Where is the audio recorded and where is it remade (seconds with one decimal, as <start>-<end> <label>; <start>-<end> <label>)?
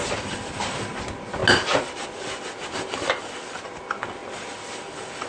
0.0-5.3 recorded